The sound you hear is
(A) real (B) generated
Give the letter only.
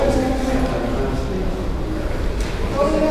A